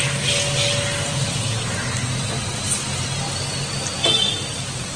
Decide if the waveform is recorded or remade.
recorded